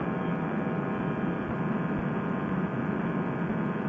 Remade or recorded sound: recorded